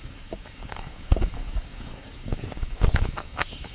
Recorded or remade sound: remade